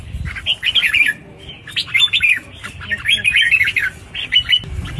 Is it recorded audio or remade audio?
recorded